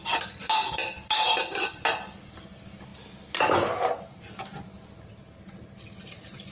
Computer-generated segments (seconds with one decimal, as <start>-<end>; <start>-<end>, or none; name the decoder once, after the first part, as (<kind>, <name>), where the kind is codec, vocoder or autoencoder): none

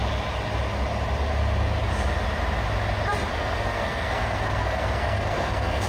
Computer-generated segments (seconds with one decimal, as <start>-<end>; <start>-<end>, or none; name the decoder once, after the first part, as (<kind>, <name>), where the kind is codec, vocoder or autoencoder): 3.3-5.9 (codec, SNAC)

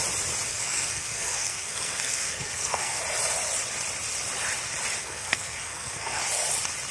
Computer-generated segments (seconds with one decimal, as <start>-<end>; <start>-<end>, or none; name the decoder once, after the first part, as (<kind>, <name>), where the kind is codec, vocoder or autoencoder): 0.5-3.0 (codec, SNAC); 5.0-6.2

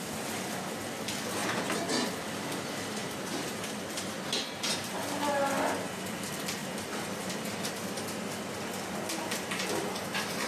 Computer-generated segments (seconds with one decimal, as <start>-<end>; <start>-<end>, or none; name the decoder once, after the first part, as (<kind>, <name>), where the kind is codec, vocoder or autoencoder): 3.0-3.6 (vocoder, BigVGAN v2)

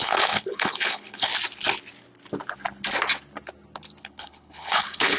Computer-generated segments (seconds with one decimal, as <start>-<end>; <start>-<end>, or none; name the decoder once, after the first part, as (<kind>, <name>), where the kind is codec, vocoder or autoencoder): 0.0-1.3 (codec, HILCodec); 4.0-5.2

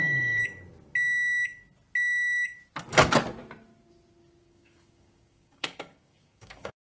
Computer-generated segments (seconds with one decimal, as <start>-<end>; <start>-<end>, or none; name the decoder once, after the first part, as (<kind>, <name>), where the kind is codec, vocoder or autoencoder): 0.0-0.4 (codec, DAC); 4.4-6.9